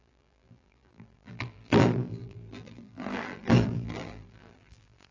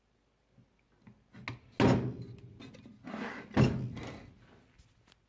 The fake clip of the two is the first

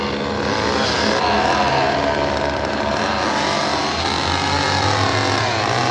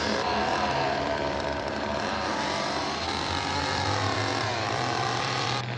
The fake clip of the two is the second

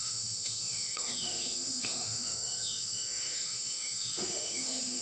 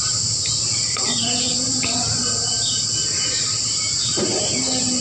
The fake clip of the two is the first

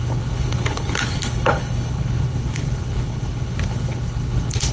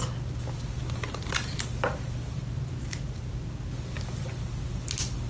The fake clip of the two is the first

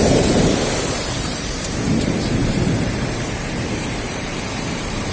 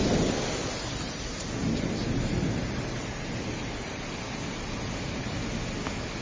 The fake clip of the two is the first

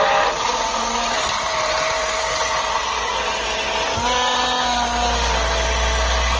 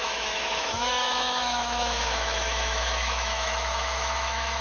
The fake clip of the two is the second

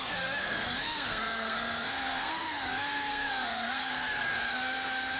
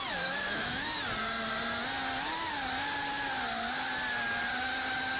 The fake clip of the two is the first